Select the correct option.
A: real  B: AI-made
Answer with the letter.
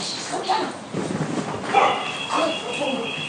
A